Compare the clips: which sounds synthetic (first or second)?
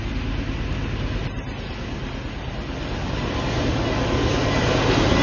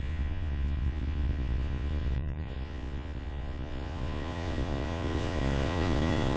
second